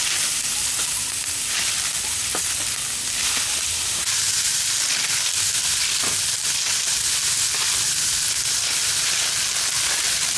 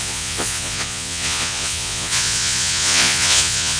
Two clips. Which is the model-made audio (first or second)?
second